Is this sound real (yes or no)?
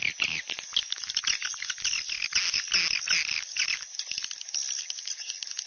yes